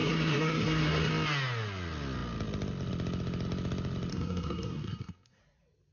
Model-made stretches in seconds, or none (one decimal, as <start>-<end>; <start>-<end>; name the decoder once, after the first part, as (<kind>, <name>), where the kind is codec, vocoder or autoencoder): 0.0-1.1 (codec, SNAC); 4.1-5.4